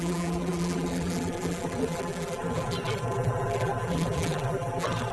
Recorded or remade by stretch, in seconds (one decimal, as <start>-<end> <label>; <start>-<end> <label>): 0.0-5.1 remade